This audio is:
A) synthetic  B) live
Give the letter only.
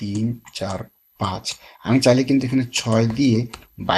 A